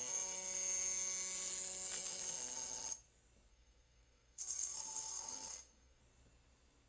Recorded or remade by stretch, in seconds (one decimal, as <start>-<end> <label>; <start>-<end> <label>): 0.0-3.5 recorded; 3.5-6.0 remade; 6.0-6.9 recorded